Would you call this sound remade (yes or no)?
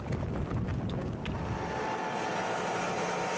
no